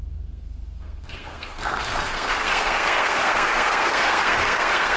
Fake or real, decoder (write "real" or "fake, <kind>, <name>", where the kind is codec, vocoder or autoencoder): fake, codec, SNAC